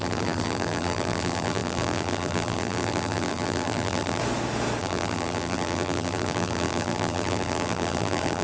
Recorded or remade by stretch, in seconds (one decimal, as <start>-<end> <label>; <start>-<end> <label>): 0.0-4.2 remade; 4.2-4.8 recorded; 4.8-8.4 remade

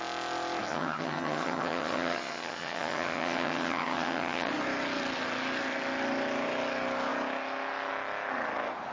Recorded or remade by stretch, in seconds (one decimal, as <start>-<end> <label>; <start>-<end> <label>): 0.0-0.7 recorded; 0.7-4.5 remade; 4.5-8.9 recorded

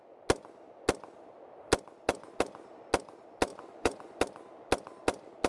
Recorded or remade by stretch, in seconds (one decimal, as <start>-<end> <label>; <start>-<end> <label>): 0.0-3.5 recorded; 3.5-4.2 remade; 4.2-5.5 recorded

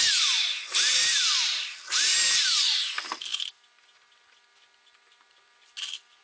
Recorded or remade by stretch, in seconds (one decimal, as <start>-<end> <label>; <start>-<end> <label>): 0.0-6.2 recorded

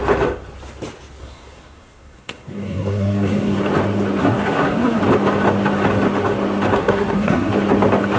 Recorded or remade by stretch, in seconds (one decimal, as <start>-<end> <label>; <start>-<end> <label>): 0.0-1.2 recorded; 1.2-3.6 remade; 3.6-4.2 recorded; 4.2-5.0 remade; 5.0-6.7 recorded; 6.7-7.5 remade; 7.5-8.2 recorded

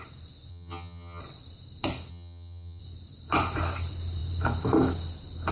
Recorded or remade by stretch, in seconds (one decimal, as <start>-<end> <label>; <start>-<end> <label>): 0.0-0.5 recorded; 0.5-1.2 remade; 1.2-2.1 recorded; 2.1-2.8 remade; 2.8-5.5 recorded

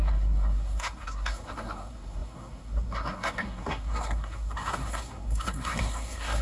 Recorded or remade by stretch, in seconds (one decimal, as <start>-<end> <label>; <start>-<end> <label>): 0.0-6.4 remade